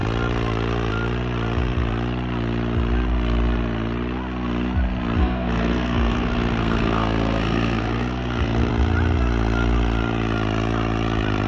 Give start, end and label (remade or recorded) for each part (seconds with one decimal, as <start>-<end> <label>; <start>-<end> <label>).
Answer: 0.0-5.2 recorded; 5.2-8.7 remade; 8.7-11.5 recorded

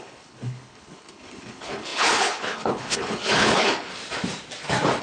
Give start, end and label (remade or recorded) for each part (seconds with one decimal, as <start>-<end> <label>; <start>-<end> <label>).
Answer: 0.0-3.9 remade; 3.9-5.0 recorded

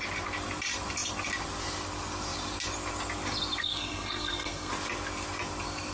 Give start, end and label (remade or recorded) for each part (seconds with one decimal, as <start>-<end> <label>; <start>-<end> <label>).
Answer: 0.0-3.6 recorded; 3.6-4.7 remade; 4.7-5.9 recorded

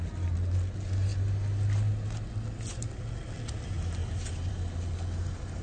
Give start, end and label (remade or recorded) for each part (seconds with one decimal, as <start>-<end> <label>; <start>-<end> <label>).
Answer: 0.0-5.6 recorded

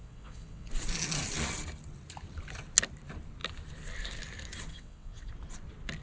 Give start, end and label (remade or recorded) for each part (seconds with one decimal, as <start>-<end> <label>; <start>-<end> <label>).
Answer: 0.0-0.7 remade; 0.7-4.7 recorded; 4.7-5.3 remade; 5.3-6.0 recorded

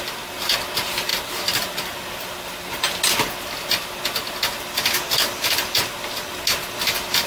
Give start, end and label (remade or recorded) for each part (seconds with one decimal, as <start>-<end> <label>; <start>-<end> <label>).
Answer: 0.0-7.3 recorded